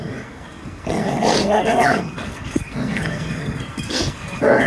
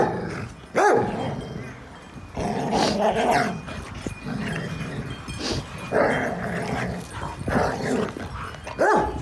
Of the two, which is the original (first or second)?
second